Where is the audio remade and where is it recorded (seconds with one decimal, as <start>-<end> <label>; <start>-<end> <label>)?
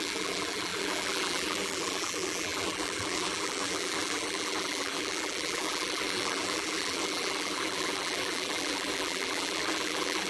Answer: 0.0-10.3 remade